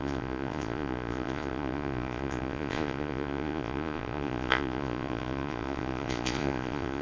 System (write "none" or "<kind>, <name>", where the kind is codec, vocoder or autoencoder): vocoder, Vocos